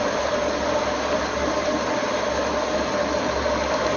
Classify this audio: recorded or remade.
recorded